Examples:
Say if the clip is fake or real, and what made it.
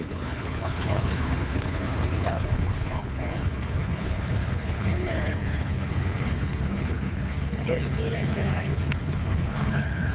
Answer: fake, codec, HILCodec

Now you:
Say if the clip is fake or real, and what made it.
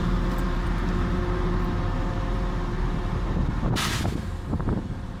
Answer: fake, vocoder, BigVGAN v2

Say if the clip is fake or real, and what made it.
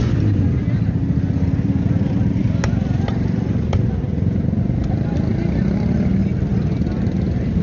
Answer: real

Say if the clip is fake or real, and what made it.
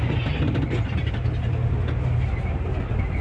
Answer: real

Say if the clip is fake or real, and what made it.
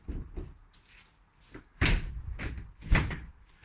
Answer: real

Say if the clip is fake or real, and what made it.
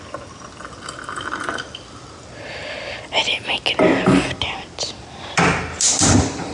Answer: real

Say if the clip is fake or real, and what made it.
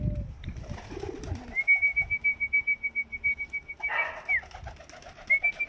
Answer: real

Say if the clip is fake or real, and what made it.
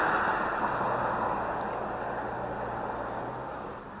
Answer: real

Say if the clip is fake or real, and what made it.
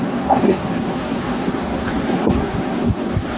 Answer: fake, codec, SNAC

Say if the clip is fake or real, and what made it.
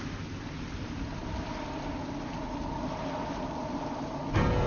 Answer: real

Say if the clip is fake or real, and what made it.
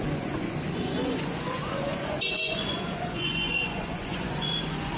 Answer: fake, vocoder, Vocos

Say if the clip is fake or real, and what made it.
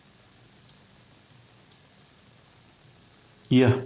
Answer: real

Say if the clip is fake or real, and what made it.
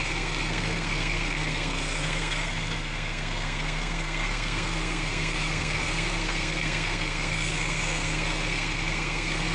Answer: fake, codec, SNAC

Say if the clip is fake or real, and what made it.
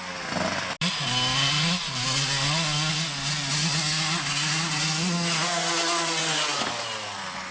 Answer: real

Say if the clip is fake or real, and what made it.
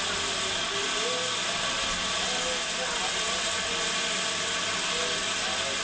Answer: real